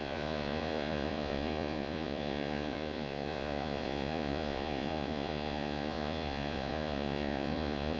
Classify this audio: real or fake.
fake